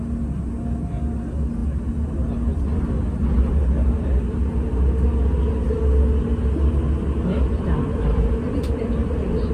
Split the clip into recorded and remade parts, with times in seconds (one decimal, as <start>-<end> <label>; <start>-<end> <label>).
0.0-9.5 recorded